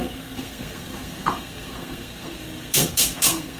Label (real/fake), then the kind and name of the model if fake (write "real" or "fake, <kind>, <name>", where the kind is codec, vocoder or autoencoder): fake, codec, SNAC